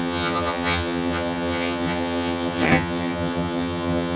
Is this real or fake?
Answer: fake